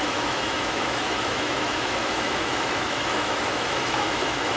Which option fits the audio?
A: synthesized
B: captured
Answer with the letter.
A